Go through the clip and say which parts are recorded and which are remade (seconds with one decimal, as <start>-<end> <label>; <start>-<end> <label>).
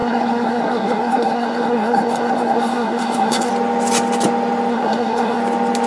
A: 0.0-3.5 remade; 3.5-4.7 recorded; 4.7-5.4 remade; 5.4-5.9 recorded